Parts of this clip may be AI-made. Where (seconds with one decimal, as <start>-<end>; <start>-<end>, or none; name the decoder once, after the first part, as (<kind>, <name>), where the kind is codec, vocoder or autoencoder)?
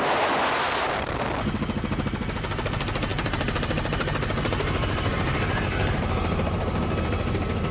3.1-6.6 (vocoder, BigVGAN v2)